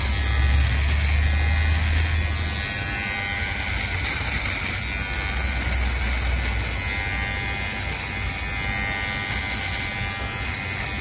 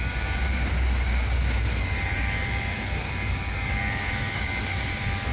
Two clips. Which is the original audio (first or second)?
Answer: first